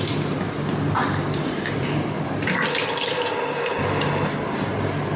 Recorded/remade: recorded